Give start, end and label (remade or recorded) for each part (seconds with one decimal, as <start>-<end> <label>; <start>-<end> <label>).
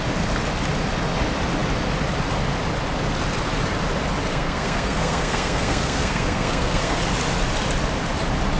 0.0-4.3 recorded; 4.3-7.0 remade; 7.0-8.6 recorded